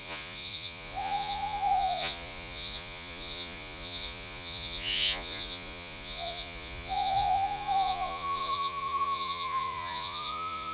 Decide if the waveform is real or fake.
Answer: fake